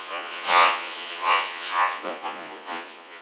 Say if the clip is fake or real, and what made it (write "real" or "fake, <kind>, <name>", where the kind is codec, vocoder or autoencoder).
fake, vocoder, Vocos